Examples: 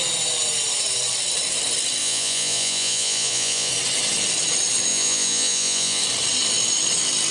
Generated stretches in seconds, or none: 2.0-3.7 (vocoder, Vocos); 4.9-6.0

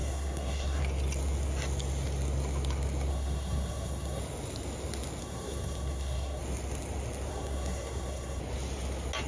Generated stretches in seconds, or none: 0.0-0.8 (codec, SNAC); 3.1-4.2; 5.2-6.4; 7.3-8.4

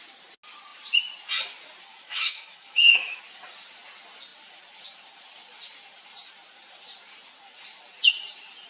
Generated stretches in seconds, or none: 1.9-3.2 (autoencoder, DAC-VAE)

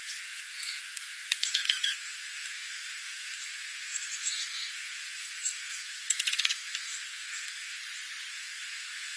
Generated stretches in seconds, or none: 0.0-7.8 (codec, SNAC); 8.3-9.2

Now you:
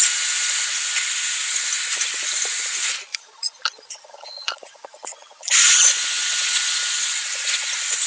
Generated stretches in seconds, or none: 3.1-5.9 (vocoder, Vocos)

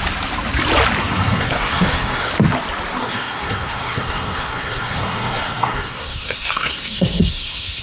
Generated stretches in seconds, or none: 1.0-2.3 (codec, SNAC); 3.0-7.8